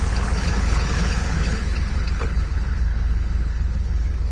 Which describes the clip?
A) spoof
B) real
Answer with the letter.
A